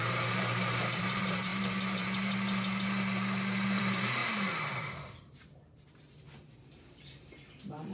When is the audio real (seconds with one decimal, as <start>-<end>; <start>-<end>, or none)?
1.5-3.8; 4.2-5.2